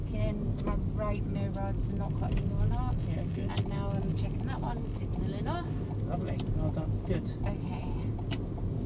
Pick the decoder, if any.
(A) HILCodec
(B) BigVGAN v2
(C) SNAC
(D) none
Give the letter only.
D